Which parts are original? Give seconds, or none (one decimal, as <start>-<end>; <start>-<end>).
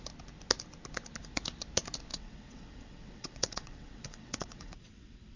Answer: 0.0-2.1